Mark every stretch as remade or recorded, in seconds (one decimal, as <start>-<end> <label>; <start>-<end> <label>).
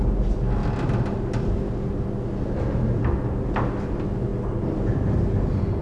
0.0-5.8 recorded